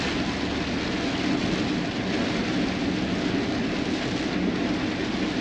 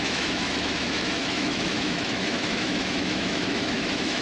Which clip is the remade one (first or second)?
second